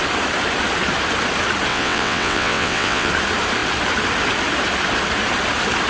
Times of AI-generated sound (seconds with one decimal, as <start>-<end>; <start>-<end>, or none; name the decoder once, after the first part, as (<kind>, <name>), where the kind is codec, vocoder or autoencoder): 1.7-3.1 (vocoder, WaveNeXt)